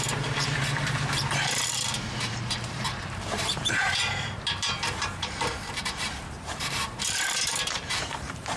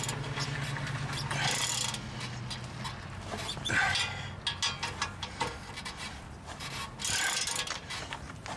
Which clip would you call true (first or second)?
second